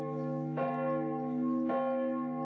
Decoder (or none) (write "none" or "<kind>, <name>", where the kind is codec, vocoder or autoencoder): none